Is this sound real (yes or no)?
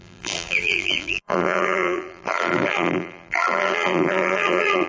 no